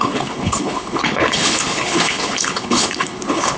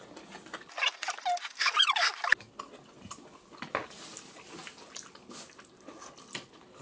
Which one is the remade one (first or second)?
first